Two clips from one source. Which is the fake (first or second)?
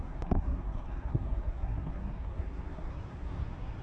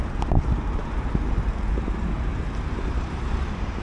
first